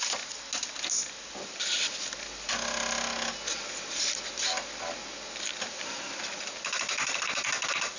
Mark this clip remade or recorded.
recorded